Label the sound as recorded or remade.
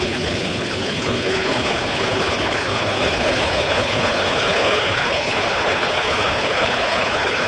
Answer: remade